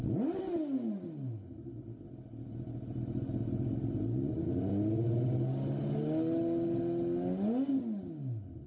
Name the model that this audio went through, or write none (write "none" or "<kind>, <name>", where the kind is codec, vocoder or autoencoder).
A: none